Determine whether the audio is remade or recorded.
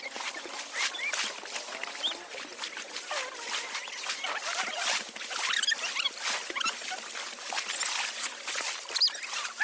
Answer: recorded